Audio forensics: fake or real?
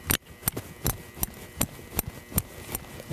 real